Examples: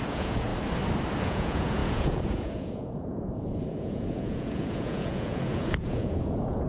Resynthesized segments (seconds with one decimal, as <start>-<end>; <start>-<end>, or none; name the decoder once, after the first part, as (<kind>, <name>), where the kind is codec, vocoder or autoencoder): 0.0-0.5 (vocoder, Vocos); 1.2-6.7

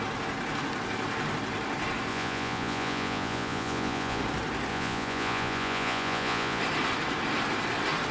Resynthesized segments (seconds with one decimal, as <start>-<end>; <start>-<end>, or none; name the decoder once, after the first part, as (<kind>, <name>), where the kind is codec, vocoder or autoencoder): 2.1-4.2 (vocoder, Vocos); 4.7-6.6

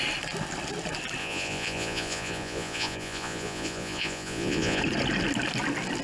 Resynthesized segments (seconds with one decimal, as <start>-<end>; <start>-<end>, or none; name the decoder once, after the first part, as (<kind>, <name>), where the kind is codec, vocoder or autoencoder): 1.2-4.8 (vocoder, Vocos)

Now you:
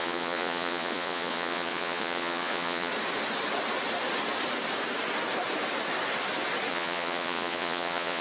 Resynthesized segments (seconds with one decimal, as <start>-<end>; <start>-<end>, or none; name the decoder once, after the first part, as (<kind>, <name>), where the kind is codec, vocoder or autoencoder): 0.0-2.9 (vocoder, Vocos); 6.7-8.2